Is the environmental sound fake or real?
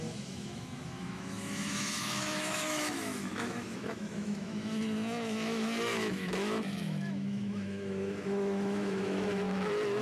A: fake